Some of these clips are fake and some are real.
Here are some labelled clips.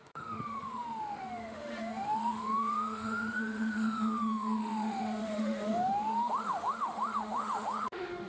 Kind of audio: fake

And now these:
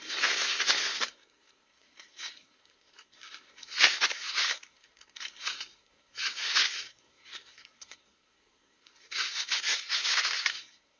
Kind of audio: fake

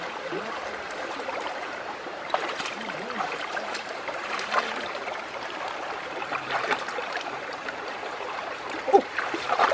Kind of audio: fake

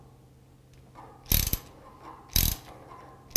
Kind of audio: real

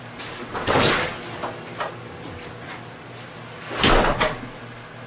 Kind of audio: real